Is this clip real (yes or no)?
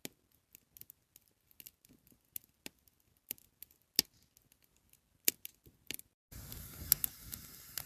yes